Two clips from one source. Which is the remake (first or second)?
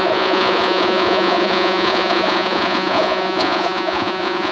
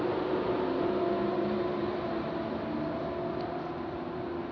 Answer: first